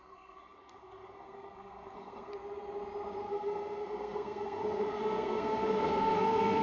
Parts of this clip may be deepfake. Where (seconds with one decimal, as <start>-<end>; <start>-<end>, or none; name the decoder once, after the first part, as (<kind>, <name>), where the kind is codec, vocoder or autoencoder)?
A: 0.0-2.3 (codec, SNAC); 3.3-6.6